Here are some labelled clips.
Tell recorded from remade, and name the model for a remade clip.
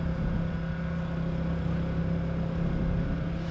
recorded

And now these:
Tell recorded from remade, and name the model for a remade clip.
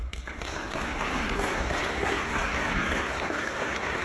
remade, codec, SNAC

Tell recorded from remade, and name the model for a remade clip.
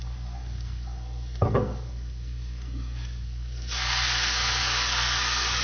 remade, codec, SNAC